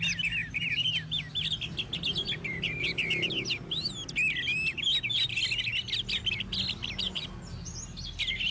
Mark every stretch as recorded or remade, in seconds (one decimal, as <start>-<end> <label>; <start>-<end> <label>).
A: 0.0-8.5 recorded